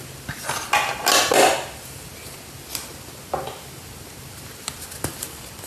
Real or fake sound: real